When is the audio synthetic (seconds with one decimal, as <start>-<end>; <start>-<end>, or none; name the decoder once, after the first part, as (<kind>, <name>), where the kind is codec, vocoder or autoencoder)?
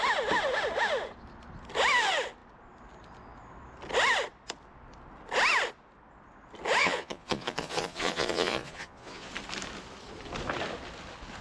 6.8-9.3 (vocoder, Vocos)